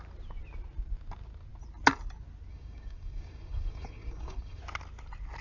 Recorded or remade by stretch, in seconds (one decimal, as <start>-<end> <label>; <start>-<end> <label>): 0.0-2.5 recorded; 2.5-4.6 remade; 4.6-5.4 recorded